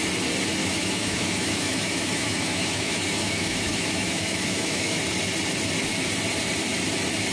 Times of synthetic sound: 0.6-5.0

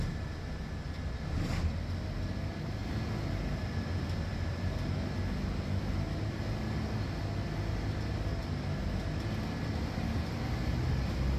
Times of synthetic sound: none

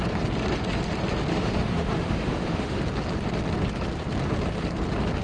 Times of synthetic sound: 1.3-2.8

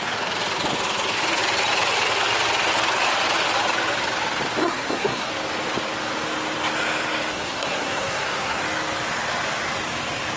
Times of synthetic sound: 4.6-5.3; 7.3-8.6

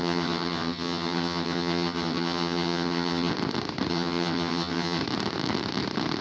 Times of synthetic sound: 0.0-3.3; 3.9-5.0

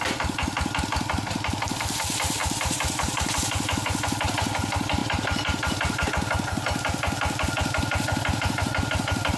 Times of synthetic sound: 2.4-3.3; 5.0-6.1